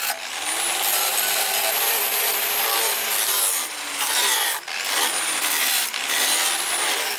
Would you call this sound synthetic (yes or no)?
no